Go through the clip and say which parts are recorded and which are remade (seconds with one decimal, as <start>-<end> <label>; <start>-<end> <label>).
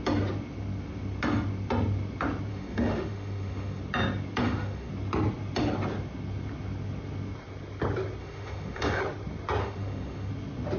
0.0-2.5 recorded; 2.5-3.8 remade; 3.8-4.4 recorded; 4.4-4.9 remade; 4.9-8.2 recorded; 8.2-9.0 remade; 9.0-9.6 recorded; 9.6-10.3 remade; 10.3-10.8 recorded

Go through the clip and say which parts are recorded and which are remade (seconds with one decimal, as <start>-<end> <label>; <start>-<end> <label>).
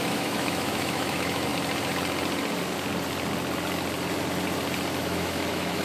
0.0-1.5 remade; 1.5-5.0 recorded; 5.0-5.8 remade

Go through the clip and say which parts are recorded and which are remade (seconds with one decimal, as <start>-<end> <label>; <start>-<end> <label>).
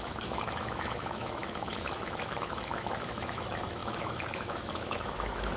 0.0-5.6 remade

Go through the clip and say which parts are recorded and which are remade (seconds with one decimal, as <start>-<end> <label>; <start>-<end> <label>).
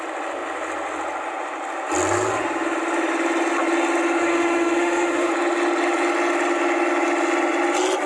0.0-4.2 recorded; 4.2-5.3 remade; 5.3-8.1 recorded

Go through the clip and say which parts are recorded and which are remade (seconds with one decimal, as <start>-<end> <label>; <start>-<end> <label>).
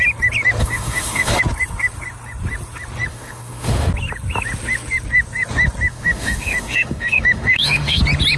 0.0-0.6 recorded; 0.6-1.4 remade; 1.4-3.1 recorded; 3.1-3.9 remade; 3.9-5.9 recorded; 5.9-8.0 remade; 8.0-8.4 recorded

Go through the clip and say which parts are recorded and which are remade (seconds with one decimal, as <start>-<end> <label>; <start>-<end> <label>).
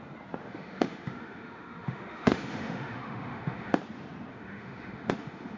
0.0-0.4 recorded; 0.4-3.8 remade; 3.8-4.3 recorded; 4.3-5.6 remade